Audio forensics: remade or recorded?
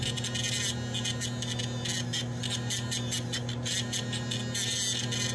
recorded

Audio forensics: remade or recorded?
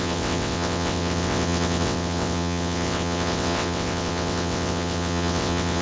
remade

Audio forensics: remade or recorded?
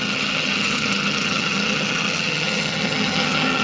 remade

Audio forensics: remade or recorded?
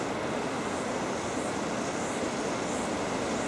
recorded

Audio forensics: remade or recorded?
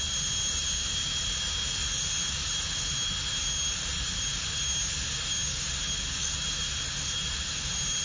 recorded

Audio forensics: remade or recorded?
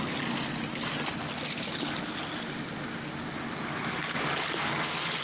recorded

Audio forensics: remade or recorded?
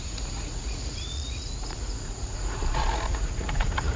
remade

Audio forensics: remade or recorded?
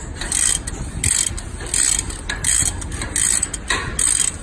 recorded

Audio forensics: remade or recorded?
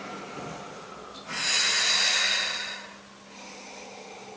recorded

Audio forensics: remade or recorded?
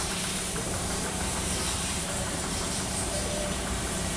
remade